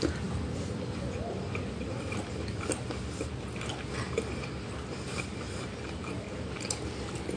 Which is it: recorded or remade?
recorded